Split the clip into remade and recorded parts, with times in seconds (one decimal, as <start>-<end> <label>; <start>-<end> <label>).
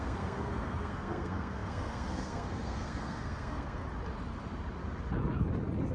0.0-3.8 remade; 3.8-5.9 recorded